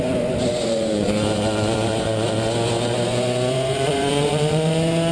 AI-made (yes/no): yes